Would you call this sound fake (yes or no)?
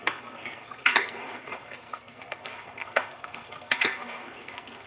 yes